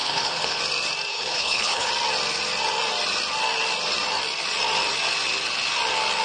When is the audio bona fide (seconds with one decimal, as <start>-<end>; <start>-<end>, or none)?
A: 0.6-1.1; 1.9-6.2